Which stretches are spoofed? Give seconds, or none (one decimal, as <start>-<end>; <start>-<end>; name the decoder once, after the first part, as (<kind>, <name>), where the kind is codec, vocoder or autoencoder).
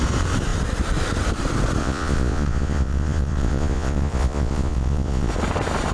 1.8-5.3 (vocoder, Vocos)